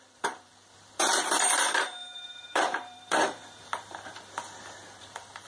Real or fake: fake